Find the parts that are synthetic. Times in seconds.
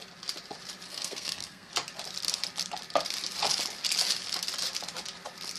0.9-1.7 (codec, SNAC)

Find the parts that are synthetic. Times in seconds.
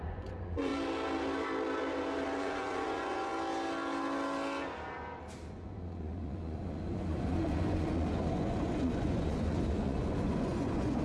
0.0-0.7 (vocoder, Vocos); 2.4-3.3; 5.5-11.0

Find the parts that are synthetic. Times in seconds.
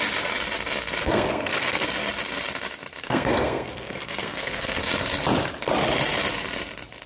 1.0-1.8 (codec, SNAC); 3.0-4.8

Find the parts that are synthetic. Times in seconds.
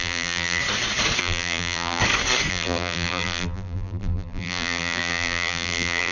0.0-0.6 (vocoder, BigVGAN v2); 1.2-2.0; 2.5-6.1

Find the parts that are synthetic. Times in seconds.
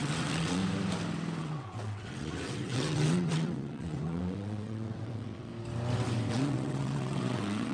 0.0-0.6 (vocoder, WaveNeXt); 1.4-5.5; 6.3-7.7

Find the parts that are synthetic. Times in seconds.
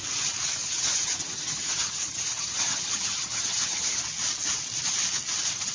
0.6-4.0 (vocoder, HiFi-GAN)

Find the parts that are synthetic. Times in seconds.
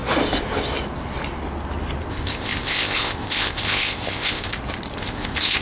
2.1-4.5 (codec, ZipCodec); 5.0-5.6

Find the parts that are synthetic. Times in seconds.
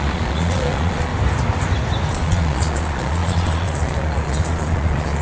0.0-1.1 (vocoder, Vocos); 2.1-5.2